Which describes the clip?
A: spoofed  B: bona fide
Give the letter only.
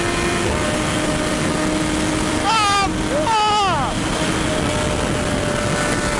B